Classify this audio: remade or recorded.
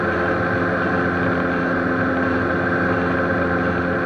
recorded